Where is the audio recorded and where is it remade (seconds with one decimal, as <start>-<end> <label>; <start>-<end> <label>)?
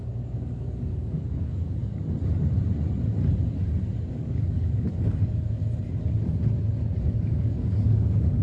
0.0-1.9 remade; 1.9-4.1 recorded; 4.1-5.6 remade; 5.6-7.0 recorded; 7.0-8.4 remade